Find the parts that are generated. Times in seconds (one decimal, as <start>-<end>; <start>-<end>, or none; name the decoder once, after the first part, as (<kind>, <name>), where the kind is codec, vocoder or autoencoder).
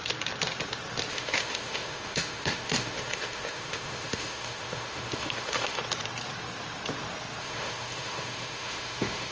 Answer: 1.1-5.8 (autoencoder, DAC-VAE); 7.4-9.3